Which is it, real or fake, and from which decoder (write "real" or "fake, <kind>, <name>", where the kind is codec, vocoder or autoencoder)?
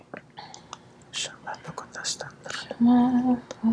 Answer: real